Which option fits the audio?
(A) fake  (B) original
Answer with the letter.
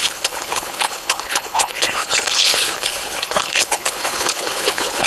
A